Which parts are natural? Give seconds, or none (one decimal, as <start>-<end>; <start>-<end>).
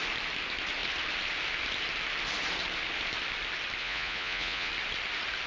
0.0-3.8; 4.7-5.5